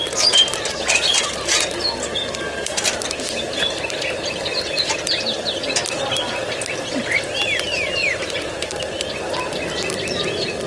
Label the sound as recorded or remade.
recorded